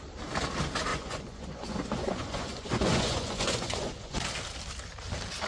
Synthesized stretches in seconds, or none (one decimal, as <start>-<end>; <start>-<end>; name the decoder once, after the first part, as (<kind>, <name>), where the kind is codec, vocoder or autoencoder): 0.9-4.2 (vocoder, Vocos)